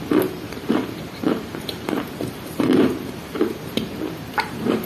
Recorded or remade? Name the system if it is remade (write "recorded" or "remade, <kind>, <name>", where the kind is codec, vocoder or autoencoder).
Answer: remade, vocoder, BigVGAN v2